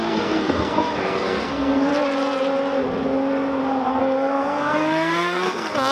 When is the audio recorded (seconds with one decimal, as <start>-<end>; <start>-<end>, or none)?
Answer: 1.9-3.9